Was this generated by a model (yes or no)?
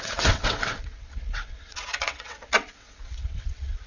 yes